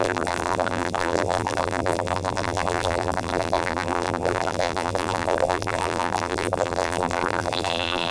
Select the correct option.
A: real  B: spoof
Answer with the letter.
B